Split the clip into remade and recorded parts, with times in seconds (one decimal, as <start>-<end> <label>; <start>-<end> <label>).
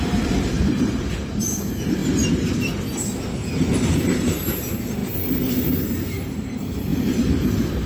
0.0-2.0 remade; 2.0-3.9 recorded; 3.9-5.0 remade; 5.0-5.9 recorded; 5.9-7.9 remade